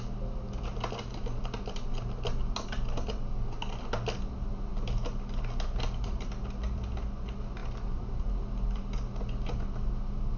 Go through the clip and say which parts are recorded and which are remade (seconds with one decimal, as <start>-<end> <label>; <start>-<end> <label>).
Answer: 0.0-10.4 recorded